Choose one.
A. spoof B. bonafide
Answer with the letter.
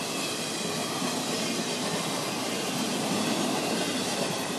B